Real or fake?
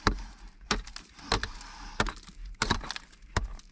fake